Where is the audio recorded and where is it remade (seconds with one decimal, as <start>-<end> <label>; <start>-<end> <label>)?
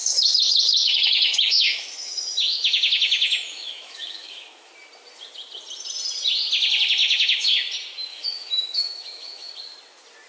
0.0-4.7 remade; 4.7-7.0 recorded; 7.0-7.5 remade; 7.5-8.1 recorded; 8.1-9.5 remade; 9.5-10.3 recorded